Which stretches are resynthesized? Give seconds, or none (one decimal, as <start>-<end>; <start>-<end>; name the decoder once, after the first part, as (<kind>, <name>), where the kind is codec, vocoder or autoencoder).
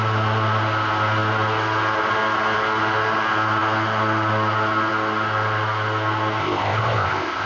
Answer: 6.4-7.5 (codec, ZipCodec)